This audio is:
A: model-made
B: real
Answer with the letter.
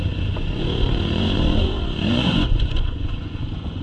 A